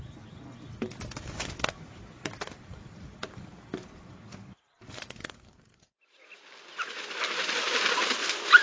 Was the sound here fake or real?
real